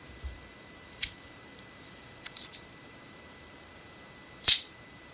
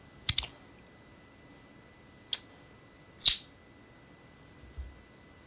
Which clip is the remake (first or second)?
first